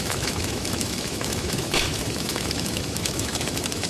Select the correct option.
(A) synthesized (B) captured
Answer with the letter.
A